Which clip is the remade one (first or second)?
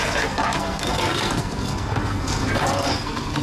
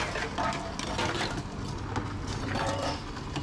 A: first